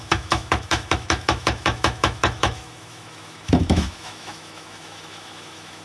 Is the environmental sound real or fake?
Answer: fake